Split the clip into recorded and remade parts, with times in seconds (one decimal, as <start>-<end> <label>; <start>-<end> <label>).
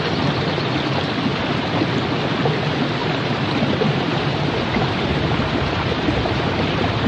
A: 0.0-1.3 recorded; 1.3-1.8 remade; 1.8-3.0 recorded; 3.0-7.1 remade